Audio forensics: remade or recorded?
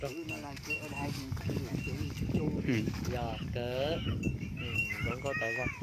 remade